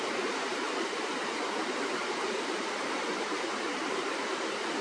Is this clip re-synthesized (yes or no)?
yes